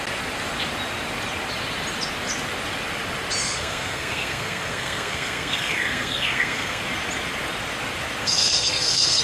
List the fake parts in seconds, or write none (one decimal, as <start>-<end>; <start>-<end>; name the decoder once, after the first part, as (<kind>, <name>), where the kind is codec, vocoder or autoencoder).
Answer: 3.4-6.8 (codec, SNAC); 8.2-9.2